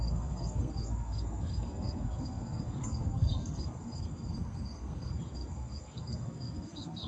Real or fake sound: fake